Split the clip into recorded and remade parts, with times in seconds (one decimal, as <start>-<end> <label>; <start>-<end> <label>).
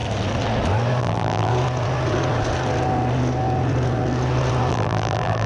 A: 0.0-1.0 recorded; 1.0-1.5 remade; 1.5-4.7 recorded; 4.7-5.5 remade